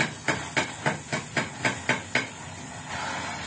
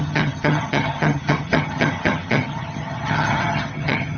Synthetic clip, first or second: second